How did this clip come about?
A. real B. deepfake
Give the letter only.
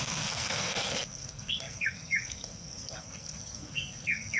B